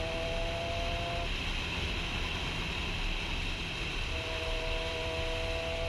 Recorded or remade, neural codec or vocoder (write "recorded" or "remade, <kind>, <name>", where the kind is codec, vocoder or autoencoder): recorded